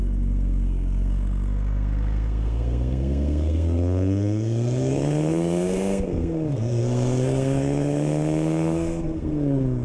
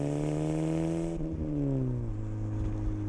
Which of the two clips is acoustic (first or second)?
second